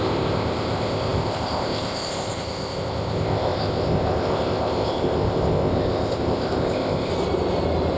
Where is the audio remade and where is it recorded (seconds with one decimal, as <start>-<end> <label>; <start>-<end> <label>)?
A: 0.0-7.1 remade; 7.1-8.0 recorded